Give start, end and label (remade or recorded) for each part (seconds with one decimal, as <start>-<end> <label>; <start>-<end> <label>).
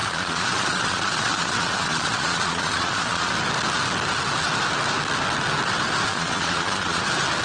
0.0-3.3 remade; 3.3-6.1 recorded; 6.1-7.0 remade; 7.0-7.4 recorded